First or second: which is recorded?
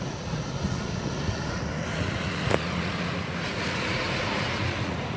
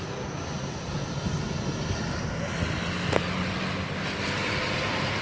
second